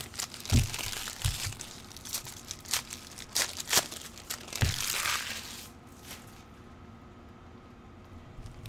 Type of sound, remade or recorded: recorded